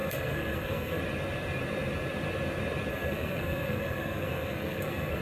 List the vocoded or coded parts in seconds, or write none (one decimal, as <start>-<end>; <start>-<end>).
0.0-1.0; 2.9-5.2